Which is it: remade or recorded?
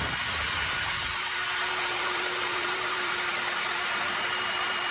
remade